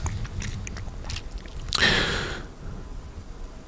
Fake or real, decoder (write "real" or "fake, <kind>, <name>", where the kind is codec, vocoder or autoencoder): real